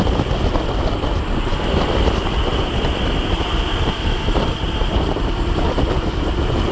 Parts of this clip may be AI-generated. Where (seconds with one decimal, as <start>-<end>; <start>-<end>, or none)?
0.0-6.7